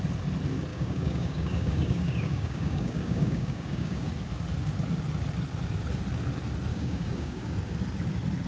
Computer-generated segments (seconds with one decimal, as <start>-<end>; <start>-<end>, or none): 0.7-4.1; 6.7-7.5